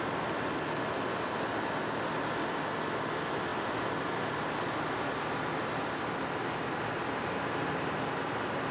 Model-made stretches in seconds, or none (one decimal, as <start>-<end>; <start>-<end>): none